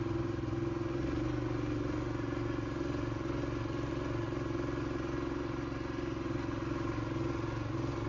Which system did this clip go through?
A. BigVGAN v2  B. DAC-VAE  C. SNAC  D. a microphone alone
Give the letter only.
D